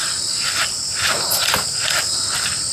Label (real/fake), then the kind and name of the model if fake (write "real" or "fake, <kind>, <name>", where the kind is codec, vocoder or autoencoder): real